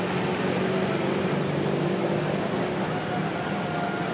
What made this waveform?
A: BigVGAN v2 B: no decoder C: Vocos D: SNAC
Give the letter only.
B